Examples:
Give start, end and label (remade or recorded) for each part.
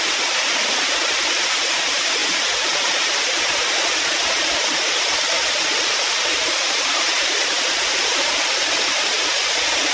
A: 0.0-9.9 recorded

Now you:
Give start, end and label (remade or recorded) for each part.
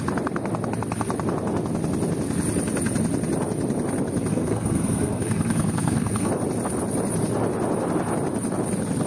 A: 0.0-4.3 recorded; 4.3-6.3 remade; 6.3-9.1 recorded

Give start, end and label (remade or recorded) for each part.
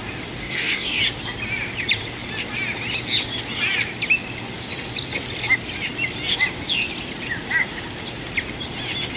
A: 0.0-0.4 recorded; 0.4-1.0 remade; 1.0-9.2 recorded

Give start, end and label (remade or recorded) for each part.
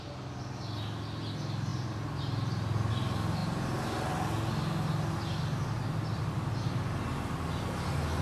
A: 0.0-8.2 recorded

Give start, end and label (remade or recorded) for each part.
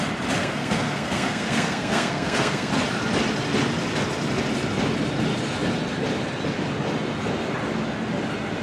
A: 0.0-0.4 recorded; 0.4-2.7 remade; 2.7-8.6 recorded